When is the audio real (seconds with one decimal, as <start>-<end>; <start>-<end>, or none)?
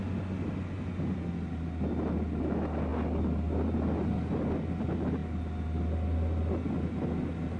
0.0-7.6